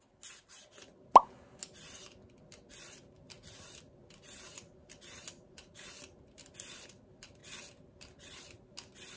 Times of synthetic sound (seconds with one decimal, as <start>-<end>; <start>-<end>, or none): none